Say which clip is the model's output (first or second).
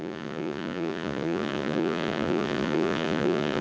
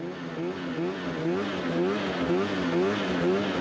first